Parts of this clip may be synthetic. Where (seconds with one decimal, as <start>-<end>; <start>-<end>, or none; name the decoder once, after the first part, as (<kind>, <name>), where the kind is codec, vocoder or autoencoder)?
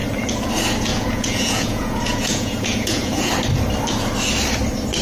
0.9-3.3 (vocoder, Vocos)